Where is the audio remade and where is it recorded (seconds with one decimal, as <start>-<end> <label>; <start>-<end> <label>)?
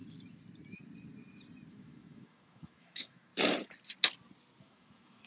0.0-1.7 recorded; 1.7-3.3 remade; 3.3-4.6 recorded; 4.6-5.3 remade